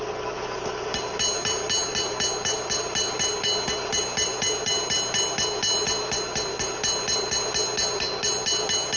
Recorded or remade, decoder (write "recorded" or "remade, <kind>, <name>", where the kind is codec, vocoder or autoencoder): recorded